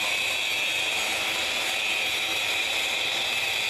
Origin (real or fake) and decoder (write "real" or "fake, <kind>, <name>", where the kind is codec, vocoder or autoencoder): real